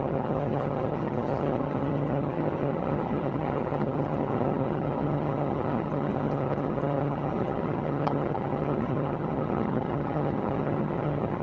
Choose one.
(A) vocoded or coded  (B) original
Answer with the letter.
A